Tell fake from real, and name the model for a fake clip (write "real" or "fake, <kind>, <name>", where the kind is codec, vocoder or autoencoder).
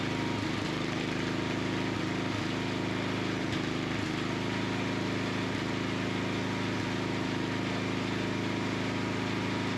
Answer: real